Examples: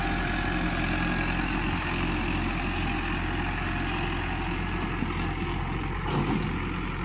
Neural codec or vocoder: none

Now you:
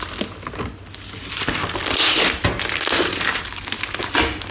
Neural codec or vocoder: none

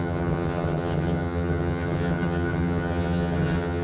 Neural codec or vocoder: vocoder, HiFi-GAN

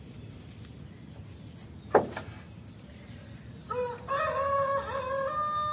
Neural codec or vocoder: none